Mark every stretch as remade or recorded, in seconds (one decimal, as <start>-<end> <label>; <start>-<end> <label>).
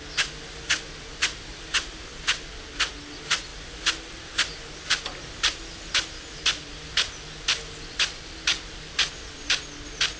0.0-10.2 recorded